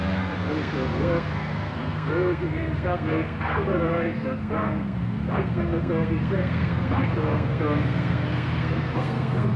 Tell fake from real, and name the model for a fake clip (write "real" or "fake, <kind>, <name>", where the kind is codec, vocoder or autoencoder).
fake, codec, SNAC